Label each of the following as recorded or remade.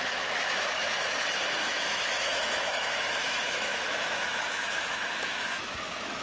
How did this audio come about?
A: remade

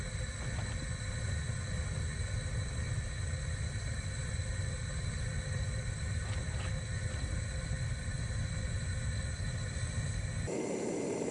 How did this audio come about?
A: recorded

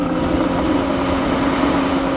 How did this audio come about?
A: recorded